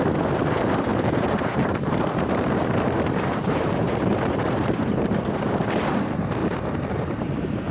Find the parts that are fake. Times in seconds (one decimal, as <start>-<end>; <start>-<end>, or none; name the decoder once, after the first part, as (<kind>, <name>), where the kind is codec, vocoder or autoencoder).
0.9-5.5 (vocoder, BigVGAN v2)